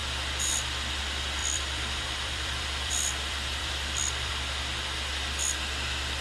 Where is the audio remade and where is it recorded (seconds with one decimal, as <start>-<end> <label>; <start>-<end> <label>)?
0.0-1.4 recorded; 1.4-4.3 remade; 4.3-6.2 recorded